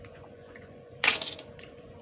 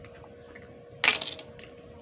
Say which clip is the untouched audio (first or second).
second